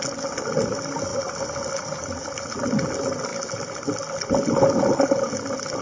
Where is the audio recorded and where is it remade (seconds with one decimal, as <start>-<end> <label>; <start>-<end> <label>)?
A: 0.0-5.8 recorded